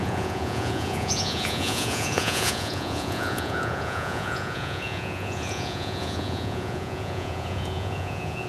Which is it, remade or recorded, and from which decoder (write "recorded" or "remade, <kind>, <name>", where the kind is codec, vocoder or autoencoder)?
remade, vocoder, Vocos